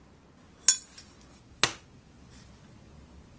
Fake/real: real